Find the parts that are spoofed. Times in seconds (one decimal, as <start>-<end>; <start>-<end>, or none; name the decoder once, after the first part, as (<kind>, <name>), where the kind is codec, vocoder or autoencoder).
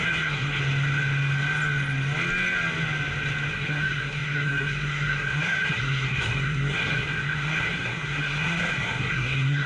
0.0-0.6 (codec, SNAC); 3.5-9.7